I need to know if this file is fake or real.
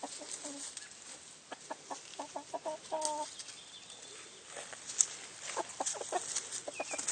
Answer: real